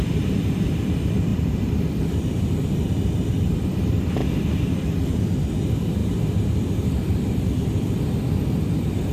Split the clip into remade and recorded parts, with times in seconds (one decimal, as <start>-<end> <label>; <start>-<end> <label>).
0.0-9.1 remade

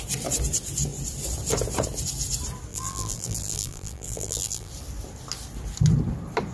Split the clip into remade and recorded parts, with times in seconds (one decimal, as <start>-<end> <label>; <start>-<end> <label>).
0.0-2.7 recorded; 2.7-4.7 remade; 4.7-6.5 recorded